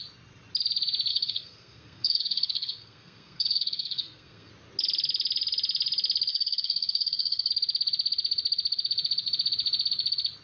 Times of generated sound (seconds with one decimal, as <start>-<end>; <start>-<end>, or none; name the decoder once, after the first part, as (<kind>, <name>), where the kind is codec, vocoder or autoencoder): 1.1-4.5 (codec, SNAC); 6.3-7.5